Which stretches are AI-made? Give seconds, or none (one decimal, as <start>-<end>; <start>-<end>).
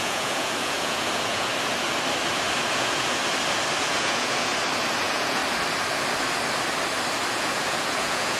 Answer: 0.0-1.5; 2.7-3.2; 3.8-4.5; 5.0-5.4; 7.3-8.4